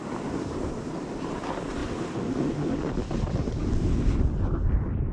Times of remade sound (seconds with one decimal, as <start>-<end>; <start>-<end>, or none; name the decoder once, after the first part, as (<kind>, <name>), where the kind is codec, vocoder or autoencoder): none